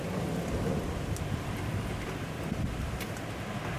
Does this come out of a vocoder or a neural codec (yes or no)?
no